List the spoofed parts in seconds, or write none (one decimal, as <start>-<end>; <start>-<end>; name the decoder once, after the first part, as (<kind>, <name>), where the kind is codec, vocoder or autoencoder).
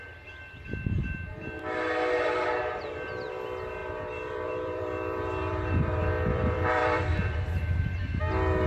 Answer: 3.8-8.0 (vocoder, BigVGAN v2)